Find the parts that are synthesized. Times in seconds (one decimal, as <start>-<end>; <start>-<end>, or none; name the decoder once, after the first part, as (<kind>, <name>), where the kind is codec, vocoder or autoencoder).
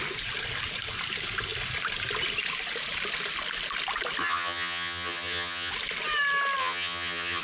4.2-5.7 (vocoder, HiFi-GAN); 6.6-7.4